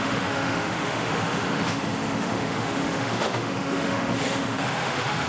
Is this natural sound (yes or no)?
no